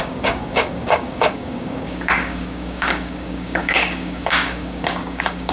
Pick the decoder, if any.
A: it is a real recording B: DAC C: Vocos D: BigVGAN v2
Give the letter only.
B